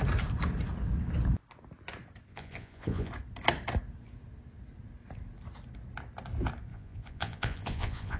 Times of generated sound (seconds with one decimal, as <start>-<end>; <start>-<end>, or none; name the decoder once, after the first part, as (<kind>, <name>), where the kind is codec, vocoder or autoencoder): 2.3-3.1 (vocoder, Vocos); 6.7-8.2

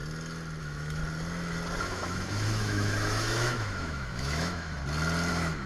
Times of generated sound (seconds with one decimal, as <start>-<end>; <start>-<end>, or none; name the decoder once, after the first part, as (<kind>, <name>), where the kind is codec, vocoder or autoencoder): 0.6-1.0 (autoencoder, DAC-VAE); 1.8-4.8; 5.3-5.7

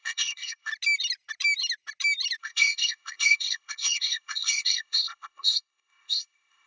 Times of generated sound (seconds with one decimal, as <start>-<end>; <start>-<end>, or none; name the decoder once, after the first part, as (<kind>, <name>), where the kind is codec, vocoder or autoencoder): 0.0-0.7 (codec, ZipCodec); 2.4-6.7

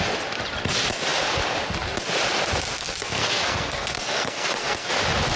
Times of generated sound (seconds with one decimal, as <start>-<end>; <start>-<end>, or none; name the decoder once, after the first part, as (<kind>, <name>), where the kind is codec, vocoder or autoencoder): 2.8-4.9 (codec, SNAC)

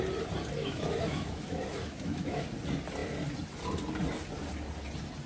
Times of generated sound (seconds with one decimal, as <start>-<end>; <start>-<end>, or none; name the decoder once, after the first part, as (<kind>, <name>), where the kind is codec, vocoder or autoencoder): 0.6-2.4 (autoencoder, DAC-VAE)

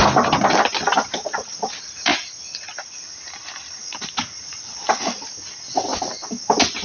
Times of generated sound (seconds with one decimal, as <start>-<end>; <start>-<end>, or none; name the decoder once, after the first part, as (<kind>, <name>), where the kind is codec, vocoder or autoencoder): none

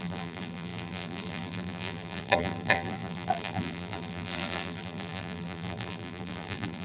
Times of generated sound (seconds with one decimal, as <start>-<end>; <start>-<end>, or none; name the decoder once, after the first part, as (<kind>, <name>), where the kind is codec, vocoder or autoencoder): 0.0-6.8 (vocoder, BigVGAN v2)

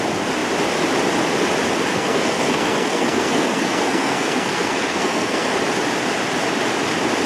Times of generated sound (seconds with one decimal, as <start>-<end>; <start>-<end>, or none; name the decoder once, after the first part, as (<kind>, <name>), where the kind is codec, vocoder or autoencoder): 1.9-5.6 (codec, SNAC)